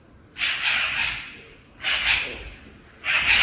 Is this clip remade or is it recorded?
recorded